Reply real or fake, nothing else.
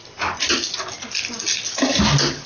real